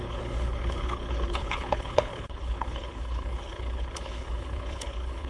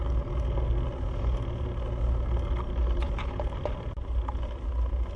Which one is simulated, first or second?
first